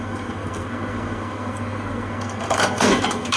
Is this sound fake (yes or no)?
yes